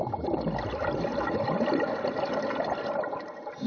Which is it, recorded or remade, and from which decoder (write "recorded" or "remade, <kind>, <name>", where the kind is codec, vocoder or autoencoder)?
recorded